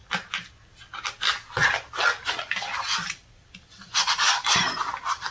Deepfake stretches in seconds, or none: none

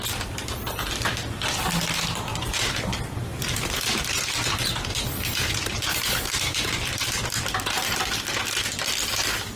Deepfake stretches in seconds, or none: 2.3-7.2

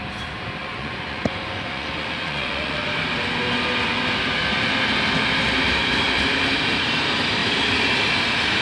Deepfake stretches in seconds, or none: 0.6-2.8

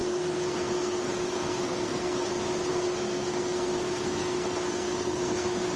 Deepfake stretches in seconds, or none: 0.0-2.3; 2.7-5.8